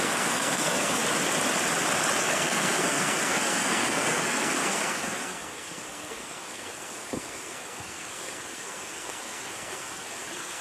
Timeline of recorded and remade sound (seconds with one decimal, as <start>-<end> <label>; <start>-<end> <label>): 0.0-1.0 remade; 1.0-2.2 recorded; 2.2-10.6 remade

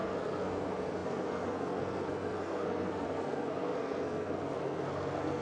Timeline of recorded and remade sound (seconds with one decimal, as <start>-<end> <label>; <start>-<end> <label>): 0.0-5.4 remade

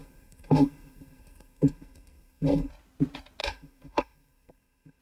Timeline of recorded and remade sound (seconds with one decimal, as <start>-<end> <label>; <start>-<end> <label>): 0.0-2.7 remade; 2.7-3.4 recorded; 3.4-5.0 remade

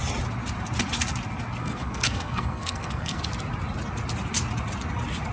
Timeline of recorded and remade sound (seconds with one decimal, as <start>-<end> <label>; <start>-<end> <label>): 0.0-1.6 recorded; 1.6-3.2 remade; 3.2-5.3 recorded

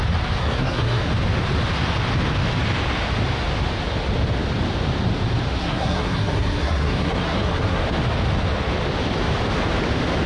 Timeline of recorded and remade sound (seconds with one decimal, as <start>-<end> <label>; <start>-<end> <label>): 0.0-0.4 recorded; 0.4-1.1 remade; 1.1-5.6 recorded; 5.6-7.8 remade; 7.8-10.3 recorded

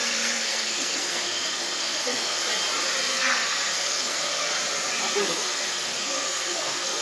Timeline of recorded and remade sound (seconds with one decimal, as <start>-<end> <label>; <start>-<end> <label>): 0.0-2.4 remade; 2.4-3.1 recorded; 3.1-4.5 remade; 4.5-5.2 recorded; 5.2-7.0 remade

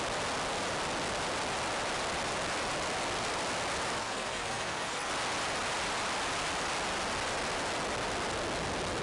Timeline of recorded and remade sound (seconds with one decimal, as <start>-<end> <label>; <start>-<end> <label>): 0.0-4.0 recorded; 4.0-5.1 remade; 5.1-9.0 recorded